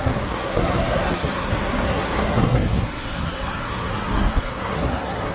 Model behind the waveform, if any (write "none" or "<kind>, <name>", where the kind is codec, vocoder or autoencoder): codec, SNAC